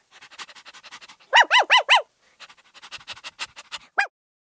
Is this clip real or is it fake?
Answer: real